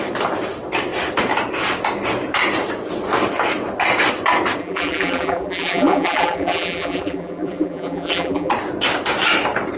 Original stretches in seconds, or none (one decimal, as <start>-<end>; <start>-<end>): 0.0-4.6; 8.5-9.8